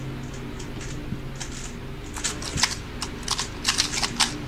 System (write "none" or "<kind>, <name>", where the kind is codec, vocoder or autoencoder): none